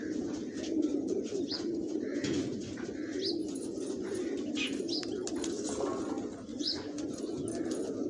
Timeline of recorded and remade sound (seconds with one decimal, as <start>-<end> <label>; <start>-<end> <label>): 0.0-0.9 recorded; 0.9-2.7 remade; 2.7-3.4 recorded; 3.4-4.2 remade; 4.2-6.5 recorded; 6.5-7.2 remade; 7.2-8.1 recorded